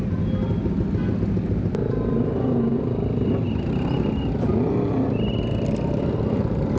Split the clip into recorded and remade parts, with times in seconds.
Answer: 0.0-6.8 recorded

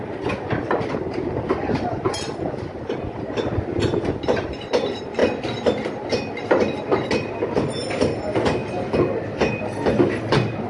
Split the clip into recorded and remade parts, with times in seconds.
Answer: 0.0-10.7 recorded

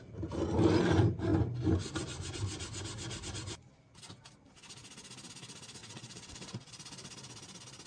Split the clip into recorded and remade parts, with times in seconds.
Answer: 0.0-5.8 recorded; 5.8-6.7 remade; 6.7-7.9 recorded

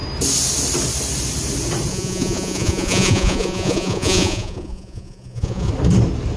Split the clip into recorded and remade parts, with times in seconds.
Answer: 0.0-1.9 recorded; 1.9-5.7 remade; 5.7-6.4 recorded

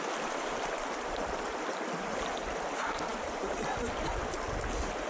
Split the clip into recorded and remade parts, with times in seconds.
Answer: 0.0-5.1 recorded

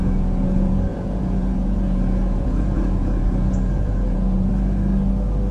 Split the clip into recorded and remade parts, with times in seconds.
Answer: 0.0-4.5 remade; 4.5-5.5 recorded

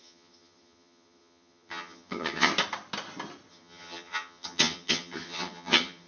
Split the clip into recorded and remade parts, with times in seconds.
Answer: 0.0-2.5 remade; 2.5-3.5 recorded; 3.5-6.1 remade